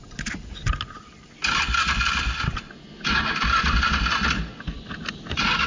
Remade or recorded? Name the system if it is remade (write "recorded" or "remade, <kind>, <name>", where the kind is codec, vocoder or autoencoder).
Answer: recorded